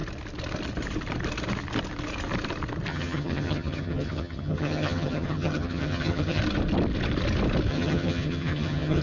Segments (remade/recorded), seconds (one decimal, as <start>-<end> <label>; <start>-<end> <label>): 0.0-2.9 recorded; 2.9-6.4 remade; 6.4-7.7 recorded; 7.7-9.0 remade